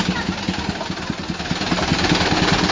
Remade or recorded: recorded